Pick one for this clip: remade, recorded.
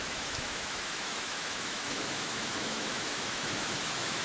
remade